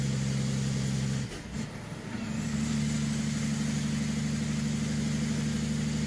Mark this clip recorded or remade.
recorded